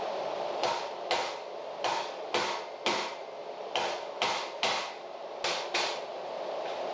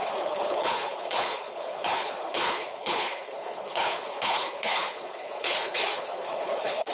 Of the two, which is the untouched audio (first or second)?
first